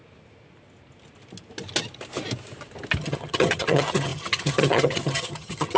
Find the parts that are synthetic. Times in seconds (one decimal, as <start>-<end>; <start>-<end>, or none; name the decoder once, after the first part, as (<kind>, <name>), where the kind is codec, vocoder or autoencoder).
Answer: 3.0-5.8 (vocoder, HiFi-GAN)